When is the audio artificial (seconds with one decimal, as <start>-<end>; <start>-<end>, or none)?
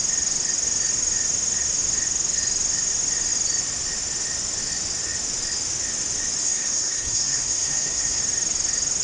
6.4-8.2